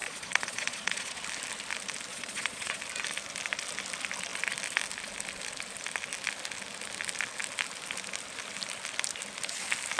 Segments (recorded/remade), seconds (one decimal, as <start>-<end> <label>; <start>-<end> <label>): 0.0-1.2 remade; 1.2-2.1 recorded; 2.1-2.8 remade; 2.8-10.0 recorded